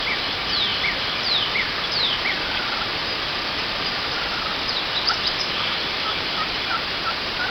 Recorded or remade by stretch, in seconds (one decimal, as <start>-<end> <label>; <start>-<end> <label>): 0.0-0.7 recorded; 0.7-5.2 remade; 5.2-7.5 recorded